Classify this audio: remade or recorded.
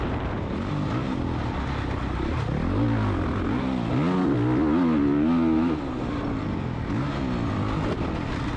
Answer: recorded